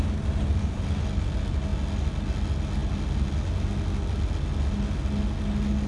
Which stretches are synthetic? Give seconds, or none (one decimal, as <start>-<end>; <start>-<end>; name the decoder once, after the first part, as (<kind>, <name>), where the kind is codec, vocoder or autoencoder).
none